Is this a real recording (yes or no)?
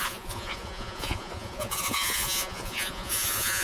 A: no